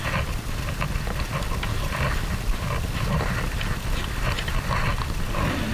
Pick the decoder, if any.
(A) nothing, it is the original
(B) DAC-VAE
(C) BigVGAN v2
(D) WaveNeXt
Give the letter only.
A